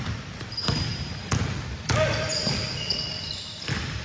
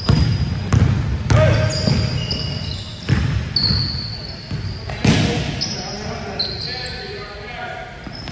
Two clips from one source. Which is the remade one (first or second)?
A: first